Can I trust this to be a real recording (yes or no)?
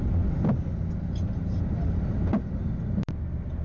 yes